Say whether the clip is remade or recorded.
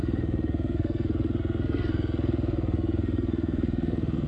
remade